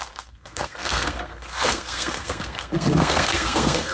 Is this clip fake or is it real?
fake